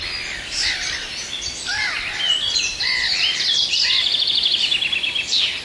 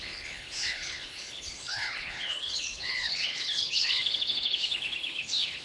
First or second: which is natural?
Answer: first